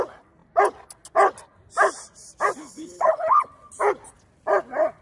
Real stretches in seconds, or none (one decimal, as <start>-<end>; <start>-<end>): 0.0-2.6; 3.5-5.0